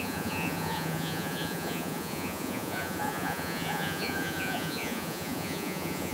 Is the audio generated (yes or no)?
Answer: yes